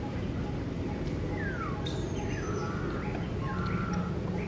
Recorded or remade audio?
recorded